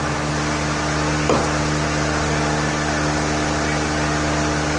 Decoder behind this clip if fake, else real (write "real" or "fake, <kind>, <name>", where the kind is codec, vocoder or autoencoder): real